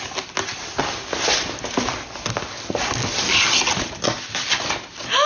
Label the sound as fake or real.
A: real